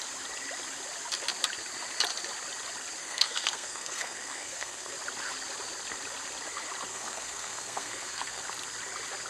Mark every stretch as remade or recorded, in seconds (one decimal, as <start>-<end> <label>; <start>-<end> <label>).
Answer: 0.0-3.0 recorded; 3.0-4.9 remade; 4.9-6.9 recorded; 6.9-8.4 remade; 8.4-9.3 recorded